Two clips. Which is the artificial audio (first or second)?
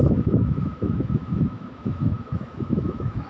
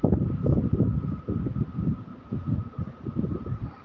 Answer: first